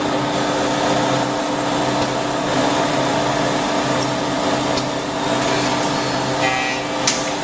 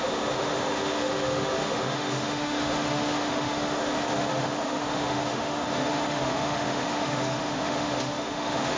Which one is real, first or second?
first